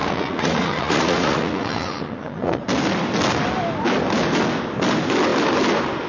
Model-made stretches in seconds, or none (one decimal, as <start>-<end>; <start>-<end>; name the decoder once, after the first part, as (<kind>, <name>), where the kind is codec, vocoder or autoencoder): 0.0-2.6 (vocoder, Vocos)